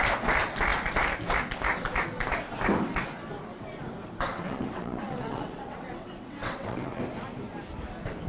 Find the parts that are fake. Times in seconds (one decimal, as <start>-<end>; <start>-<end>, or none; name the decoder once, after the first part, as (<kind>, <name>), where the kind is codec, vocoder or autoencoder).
4.3-7.0 (vocoder, WaveNeXt)